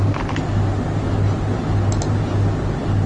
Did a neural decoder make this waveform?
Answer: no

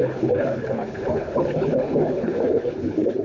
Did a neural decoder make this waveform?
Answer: yes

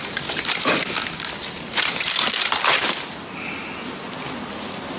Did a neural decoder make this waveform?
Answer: no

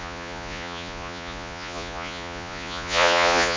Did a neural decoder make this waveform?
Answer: yes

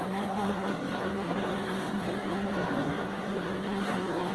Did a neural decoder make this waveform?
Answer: yes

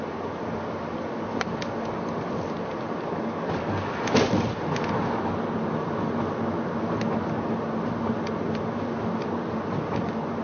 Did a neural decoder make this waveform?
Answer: no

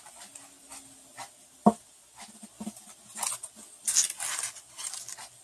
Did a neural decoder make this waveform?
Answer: no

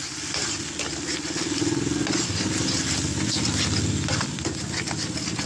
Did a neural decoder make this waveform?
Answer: no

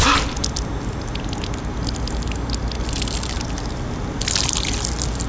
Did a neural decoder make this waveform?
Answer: no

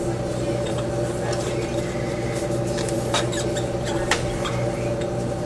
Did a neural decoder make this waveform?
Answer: no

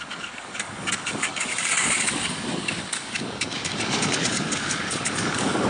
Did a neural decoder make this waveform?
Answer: yes